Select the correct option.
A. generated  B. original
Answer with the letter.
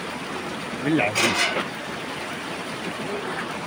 A